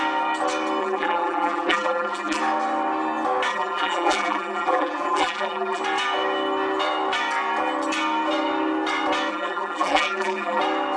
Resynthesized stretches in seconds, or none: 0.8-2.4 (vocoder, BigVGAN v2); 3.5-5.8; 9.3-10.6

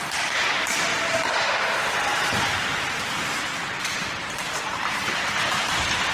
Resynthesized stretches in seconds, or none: 0.0-0.9 (vocoder, BigVGAN v2); 1.6-6.1

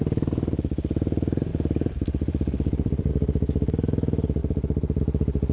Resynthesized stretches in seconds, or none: 1.5-3.1 (vocoder, BigVGAN v2); 4.4-5.0

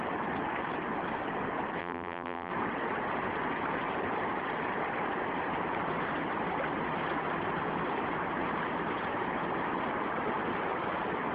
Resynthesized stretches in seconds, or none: 1.8-2.5 (vocoder, BigVGAN v2)

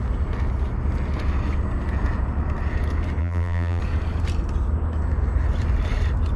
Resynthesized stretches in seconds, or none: 3.2-3.8 (vocoder, BigVGAN v2)

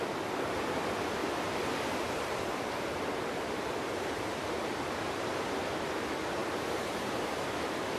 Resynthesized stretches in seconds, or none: 1.2-5.5 (vocoder, BigVGAN v2); 6.4-7.2